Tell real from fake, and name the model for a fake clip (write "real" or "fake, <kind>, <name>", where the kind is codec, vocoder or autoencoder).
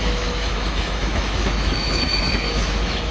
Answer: fake, autoencoder, DAC-VAE